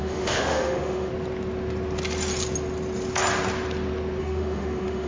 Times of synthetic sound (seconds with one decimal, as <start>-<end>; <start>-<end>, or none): 0.0-1.1; 4.2-5.1